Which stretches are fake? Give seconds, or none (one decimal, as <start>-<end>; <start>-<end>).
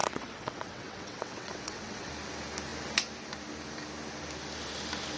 0.0-2.1